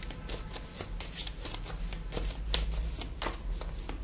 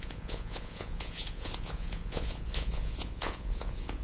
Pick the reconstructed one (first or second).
second